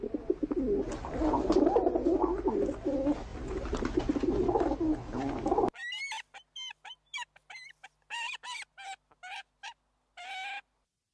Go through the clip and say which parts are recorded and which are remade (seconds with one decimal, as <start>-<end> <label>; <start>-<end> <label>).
0.0-11.1 recorded